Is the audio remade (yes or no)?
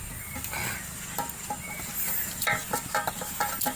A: no